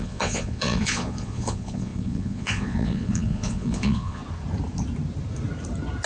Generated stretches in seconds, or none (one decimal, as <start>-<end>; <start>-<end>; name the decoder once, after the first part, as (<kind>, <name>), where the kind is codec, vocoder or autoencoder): 0.0-4.2 (vocoder, Vocos)